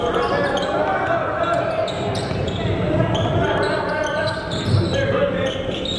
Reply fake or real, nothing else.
real